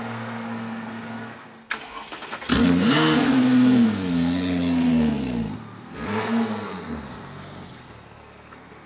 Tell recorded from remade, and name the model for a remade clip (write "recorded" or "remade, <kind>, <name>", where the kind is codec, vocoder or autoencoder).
remade, codec, SNAC